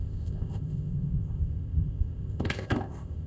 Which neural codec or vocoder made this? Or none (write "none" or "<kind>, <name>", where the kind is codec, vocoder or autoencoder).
codec, ZipCodec